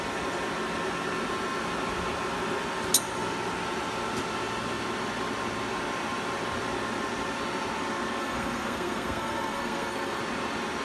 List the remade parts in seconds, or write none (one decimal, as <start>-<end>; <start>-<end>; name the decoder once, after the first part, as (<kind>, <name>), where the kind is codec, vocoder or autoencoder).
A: 8.2-10.2 (codec, SNAC)